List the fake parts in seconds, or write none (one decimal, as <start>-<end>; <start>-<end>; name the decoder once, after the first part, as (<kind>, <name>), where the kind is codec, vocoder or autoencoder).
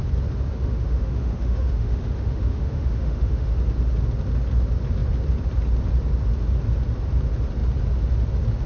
0.6-3.5 (autoencoder, DAC-VAE)